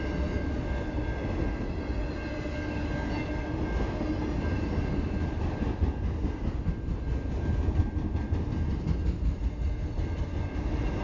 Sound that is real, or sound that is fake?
real